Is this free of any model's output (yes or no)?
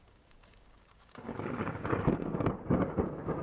no